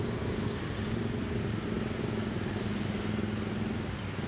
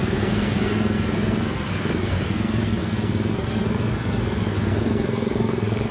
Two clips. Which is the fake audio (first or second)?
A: second